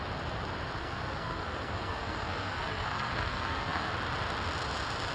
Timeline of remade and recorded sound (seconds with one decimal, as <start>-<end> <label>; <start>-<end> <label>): 0.0-0.8 recorded; 0.8-3.9 remade; 3.9-5.1 recorded